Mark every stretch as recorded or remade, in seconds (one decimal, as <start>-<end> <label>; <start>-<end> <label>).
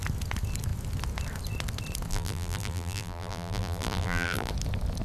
0.0-2.1 recorded; 2.1-4.5 remade; 4.5-5.0 recorded